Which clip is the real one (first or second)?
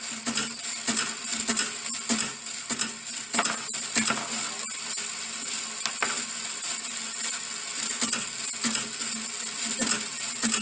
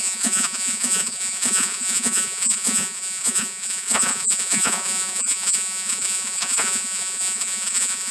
first